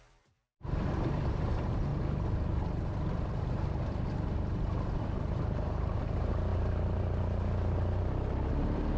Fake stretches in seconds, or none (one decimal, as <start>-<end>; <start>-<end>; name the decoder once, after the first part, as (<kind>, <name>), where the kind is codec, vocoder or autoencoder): 0.0-1.9 (vocoder, BigVGAN v2); 5.0-6.5; 8.5-9.0